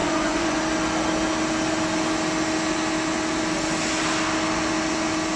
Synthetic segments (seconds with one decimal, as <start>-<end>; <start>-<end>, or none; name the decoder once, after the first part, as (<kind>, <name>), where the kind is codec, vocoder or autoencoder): 0.0-0.6 (vocoder, Vocos)